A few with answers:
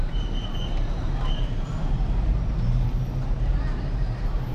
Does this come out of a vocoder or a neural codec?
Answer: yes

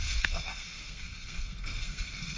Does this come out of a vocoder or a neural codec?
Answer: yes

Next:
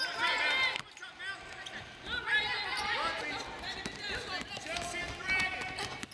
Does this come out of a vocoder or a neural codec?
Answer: no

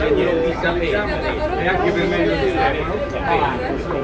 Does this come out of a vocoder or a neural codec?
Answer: no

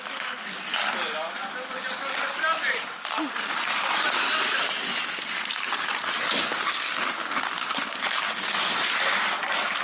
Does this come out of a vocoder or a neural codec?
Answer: no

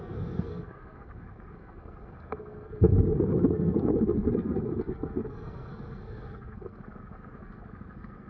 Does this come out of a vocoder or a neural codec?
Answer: yes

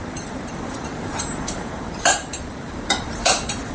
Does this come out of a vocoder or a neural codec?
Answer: yes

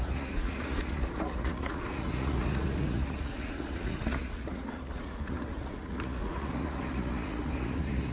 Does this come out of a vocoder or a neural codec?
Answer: yes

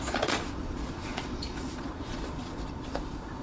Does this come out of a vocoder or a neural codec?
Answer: yes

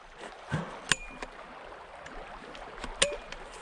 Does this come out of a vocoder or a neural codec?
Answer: no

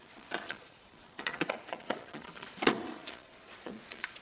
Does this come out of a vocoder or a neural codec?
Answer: yes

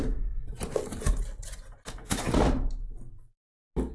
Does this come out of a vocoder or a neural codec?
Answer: no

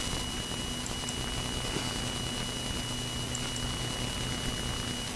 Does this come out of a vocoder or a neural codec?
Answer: no